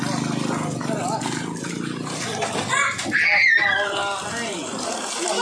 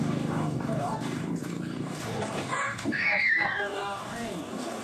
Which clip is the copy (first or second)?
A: second